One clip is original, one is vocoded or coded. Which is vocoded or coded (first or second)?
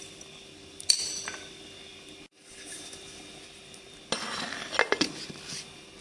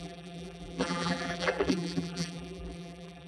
second